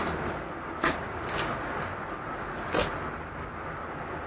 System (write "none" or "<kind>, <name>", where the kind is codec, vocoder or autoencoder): none